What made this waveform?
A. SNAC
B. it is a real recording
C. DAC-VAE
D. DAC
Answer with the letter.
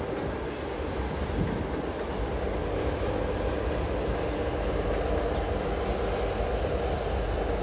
B